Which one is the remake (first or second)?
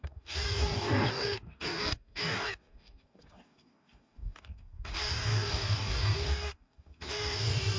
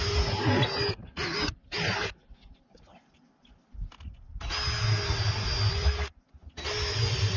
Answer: first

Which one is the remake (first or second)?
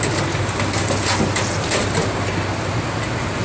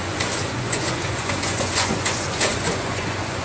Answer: second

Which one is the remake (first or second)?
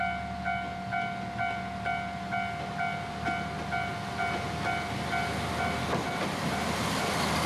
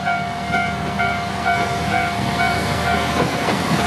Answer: second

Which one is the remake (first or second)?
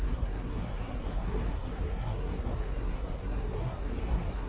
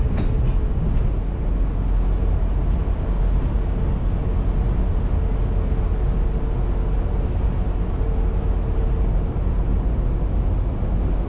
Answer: first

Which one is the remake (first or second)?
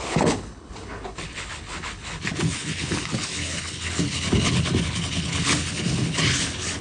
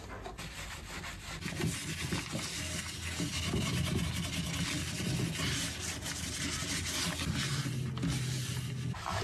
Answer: first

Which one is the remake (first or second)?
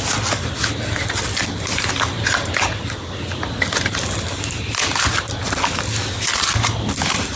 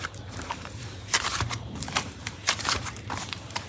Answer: second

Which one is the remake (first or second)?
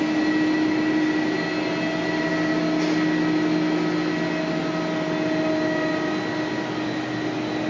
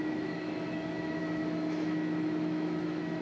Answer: second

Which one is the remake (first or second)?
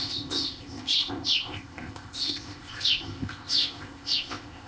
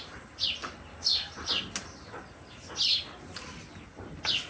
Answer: first